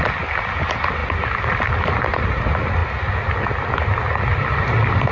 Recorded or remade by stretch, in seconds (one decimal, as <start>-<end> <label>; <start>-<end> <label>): 0.0-1.0 recorded; 1.0-1.7 remade; 1.7-4.0 recorded; 4.0-5.1 remade